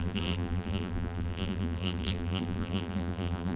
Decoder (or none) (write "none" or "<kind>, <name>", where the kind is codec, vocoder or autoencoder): vocoder, BigVGAN v2